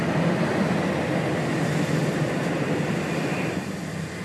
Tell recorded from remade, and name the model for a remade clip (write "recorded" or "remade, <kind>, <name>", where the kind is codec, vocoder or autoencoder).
recorded